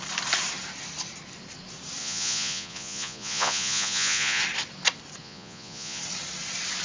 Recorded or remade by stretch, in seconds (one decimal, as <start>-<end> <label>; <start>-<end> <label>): 0.0-2.0 recorded; 2.0-4.4 remade; 4.4-5.2 recorded; 5.2-6.0 remade; 6.0-6.8 recorded